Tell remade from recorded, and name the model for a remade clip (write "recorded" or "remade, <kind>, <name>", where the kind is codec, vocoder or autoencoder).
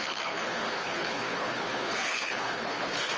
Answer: remade, codec, HILCodec